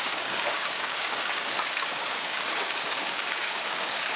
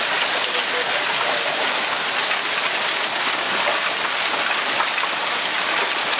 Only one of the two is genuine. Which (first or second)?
second